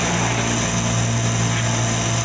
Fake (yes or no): no